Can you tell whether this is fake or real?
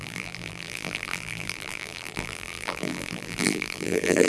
fake